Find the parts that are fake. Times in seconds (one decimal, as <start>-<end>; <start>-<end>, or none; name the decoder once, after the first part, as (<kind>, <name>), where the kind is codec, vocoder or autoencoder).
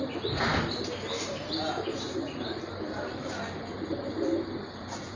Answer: none